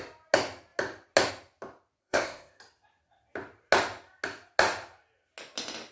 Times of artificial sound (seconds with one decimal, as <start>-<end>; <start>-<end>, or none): 2.0-2.6